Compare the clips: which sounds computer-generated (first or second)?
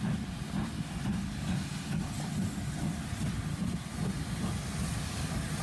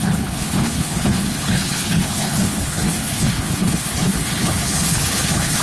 second